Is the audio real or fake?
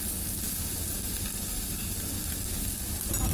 real